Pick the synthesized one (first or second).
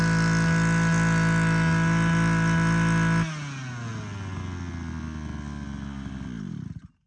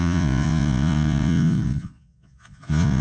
second